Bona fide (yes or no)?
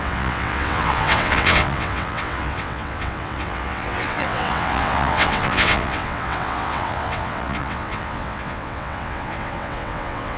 no